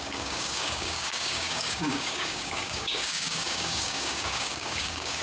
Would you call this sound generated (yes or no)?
yes